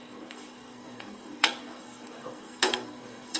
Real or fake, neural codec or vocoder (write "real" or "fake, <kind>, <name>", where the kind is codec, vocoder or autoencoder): fake, codec, SNAC